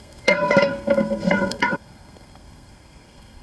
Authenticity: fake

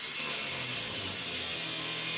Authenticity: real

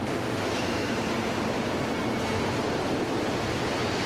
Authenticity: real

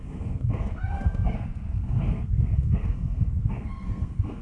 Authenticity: fake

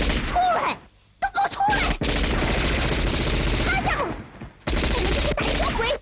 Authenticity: real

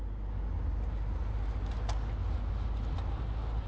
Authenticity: real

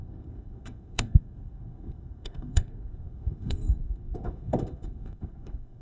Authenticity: fake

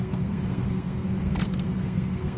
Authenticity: fake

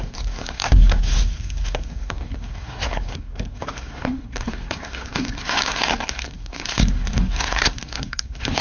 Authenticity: fake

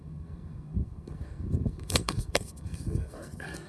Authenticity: fake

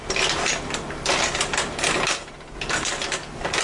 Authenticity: real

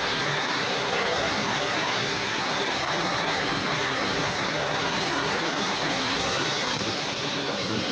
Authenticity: fake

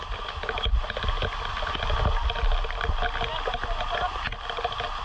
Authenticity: real